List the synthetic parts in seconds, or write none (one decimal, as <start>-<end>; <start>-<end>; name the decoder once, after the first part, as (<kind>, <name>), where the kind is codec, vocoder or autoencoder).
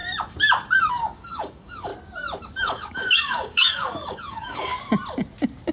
0.9-1.9 (codec, DAC); 2.6-4.7